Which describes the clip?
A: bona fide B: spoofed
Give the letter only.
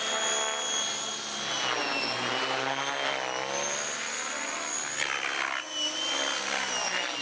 A